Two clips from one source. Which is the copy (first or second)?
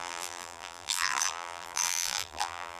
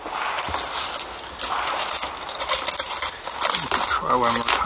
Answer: first